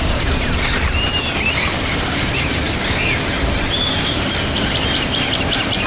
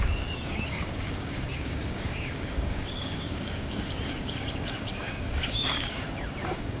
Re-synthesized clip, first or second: second